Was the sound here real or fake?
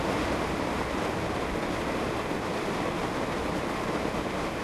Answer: real